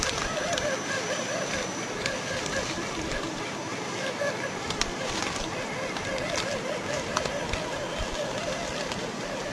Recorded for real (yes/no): no